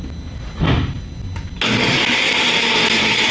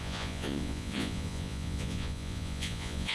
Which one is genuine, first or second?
first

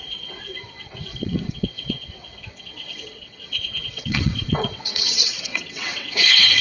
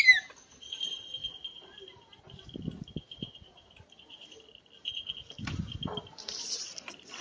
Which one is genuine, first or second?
second